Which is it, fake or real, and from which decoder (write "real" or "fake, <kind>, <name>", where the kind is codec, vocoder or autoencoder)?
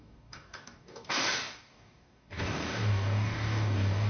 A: fake, codec, DAC